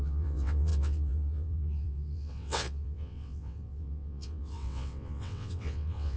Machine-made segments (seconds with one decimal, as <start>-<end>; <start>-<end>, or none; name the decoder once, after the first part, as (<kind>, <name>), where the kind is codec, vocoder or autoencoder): 0.0-6.2 (vocoder, WaveNeXt)